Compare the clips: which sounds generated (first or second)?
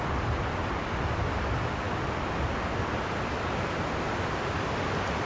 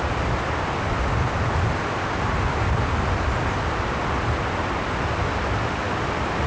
first